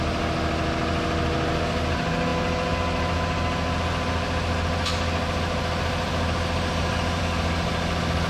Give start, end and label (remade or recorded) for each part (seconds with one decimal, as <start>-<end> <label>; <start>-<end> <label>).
0.0-8.3 recorded